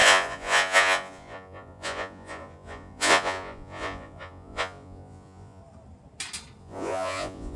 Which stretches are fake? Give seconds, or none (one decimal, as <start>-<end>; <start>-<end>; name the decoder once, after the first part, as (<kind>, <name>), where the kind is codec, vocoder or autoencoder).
0.0-5.6 (vocoder, Vocos); 6.6-7.6

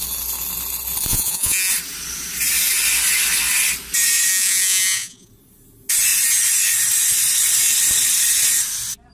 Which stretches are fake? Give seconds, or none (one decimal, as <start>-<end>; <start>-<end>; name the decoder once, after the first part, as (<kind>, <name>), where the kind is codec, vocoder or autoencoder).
1.1-1.7 (vocoder, Vocos); 4.3-5.3

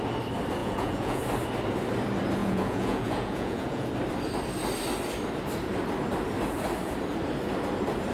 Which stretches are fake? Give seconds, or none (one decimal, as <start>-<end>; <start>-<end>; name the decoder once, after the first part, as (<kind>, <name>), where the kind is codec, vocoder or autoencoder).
0.6-1.2 (vocoder, Vocos); 2.4-3.9

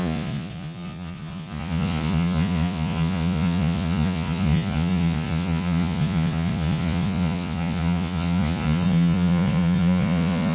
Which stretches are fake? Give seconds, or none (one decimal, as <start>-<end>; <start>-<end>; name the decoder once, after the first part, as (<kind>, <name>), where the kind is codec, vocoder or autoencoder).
0.0-10.5 (vocoder, Vocos)

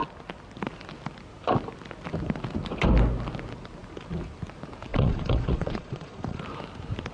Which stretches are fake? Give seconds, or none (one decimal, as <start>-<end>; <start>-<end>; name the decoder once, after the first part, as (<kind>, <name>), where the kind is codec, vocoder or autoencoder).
4.9-6.4 (vocoder, Vocos)

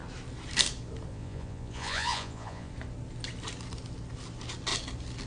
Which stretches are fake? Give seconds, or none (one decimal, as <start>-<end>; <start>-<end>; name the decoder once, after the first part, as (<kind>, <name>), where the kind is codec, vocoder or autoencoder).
1.1-2.7 (vocoder, Vocos)

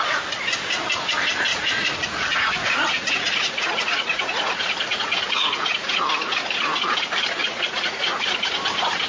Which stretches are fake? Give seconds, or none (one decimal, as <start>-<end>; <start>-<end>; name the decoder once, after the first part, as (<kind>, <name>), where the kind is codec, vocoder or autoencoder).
1.5-6.0 (vocoder, Vocos); 7.4-8.3